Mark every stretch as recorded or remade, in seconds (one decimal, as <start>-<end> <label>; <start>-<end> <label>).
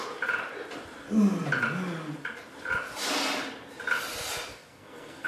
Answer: 0.0-4.5 recorded; 4.5-5.3 remade